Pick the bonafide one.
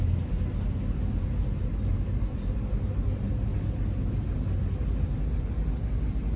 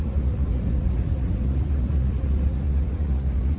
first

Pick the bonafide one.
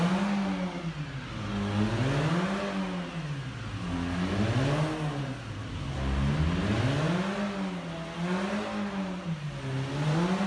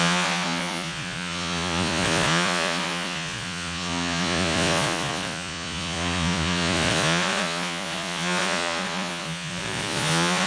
first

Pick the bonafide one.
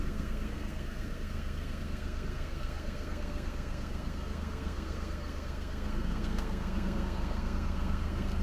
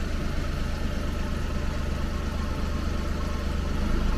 second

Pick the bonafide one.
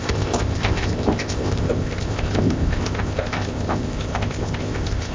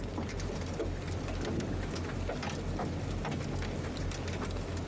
second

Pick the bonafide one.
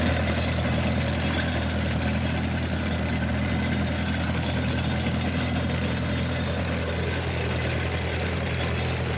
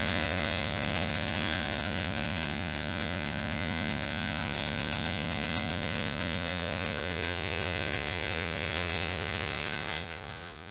first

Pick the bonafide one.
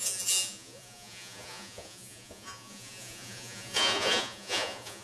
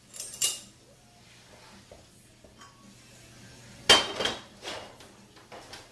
second